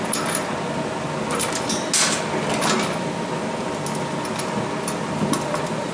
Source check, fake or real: real